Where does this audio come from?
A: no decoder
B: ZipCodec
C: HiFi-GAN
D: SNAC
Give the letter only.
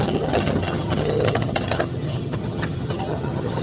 C